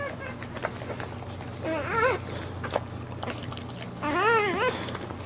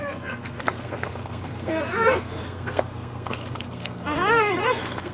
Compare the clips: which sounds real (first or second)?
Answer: first